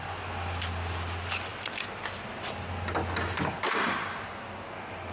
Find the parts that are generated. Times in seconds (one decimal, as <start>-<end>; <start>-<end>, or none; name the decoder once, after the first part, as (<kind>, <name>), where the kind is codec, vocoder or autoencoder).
none